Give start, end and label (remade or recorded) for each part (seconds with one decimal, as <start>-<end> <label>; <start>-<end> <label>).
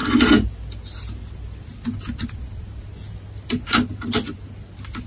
0.0-5.1 recorded